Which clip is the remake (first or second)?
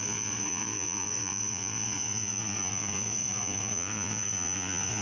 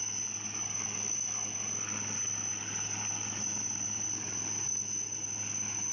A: first